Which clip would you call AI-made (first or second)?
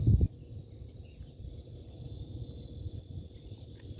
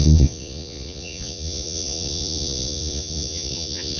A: second